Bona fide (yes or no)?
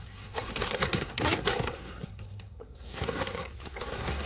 no